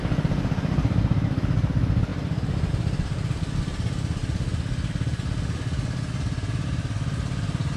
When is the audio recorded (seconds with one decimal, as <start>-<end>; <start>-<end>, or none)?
0.0-7.8